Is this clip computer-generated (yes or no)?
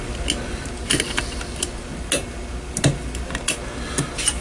no